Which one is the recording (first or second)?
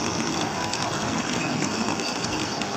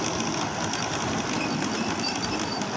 second